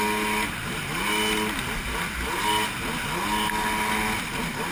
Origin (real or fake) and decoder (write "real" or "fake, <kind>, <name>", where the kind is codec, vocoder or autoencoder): real